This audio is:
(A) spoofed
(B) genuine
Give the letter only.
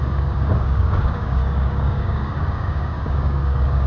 A